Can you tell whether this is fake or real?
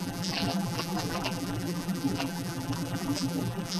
fake